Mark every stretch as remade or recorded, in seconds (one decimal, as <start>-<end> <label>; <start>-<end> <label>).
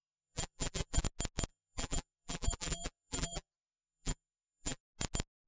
0.0-1.0 remade; 1.0-1.5 recorded; 1.5-4.8 remade; 4.8-5.5 recorded